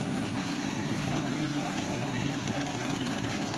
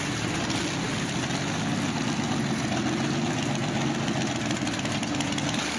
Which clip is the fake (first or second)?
first